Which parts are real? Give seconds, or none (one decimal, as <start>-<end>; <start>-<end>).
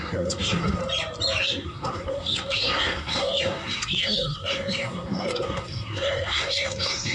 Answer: 0.8-1.4